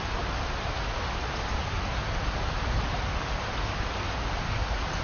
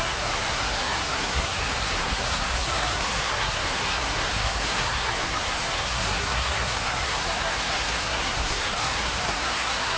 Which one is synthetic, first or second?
second